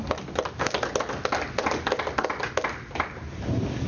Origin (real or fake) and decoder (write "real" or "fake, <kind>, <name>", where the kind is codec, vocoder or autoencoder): real